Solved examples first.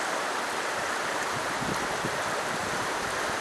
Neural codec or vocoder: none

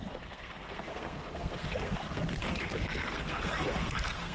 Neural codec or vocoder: codec, SNAC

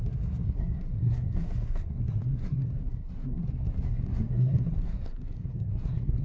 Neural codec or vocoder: codec, SNAC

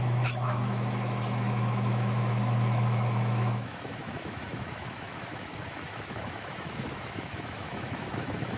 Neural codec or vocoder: autoencoder, DAC-VAE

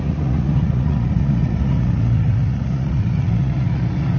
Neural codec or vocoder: vocoder, Vocos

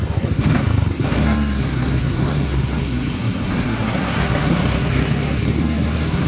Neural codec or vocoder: codec, SNAC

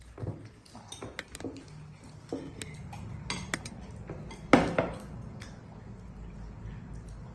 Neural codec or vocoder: none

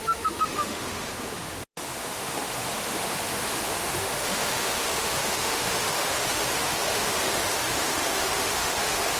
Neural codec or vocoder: autoencoder, DAC-VAE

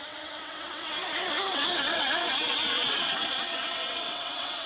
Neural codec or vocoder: vocoder, WaveNeXt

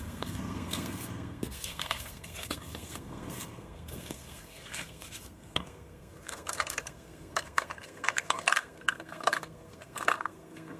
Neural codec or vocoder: codec, SNAC